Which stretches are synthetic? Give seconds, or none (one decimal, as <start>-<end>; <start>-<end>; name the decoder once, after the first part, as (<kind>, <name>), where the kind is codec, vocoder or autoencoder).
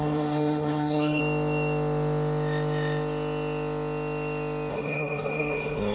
0.0-1.2 (codec, SNAC); 4.7-5.9